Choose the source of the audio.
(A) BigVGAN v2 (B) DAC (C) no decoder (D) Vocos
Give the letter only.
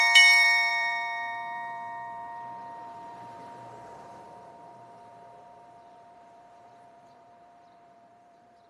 A